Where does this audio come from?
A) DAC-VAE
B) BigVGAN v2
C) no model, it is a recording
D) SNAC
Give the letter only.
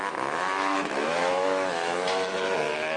A